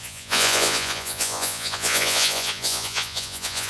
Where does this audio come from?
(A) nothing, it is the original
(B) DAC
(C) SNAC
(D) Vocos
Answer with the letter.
D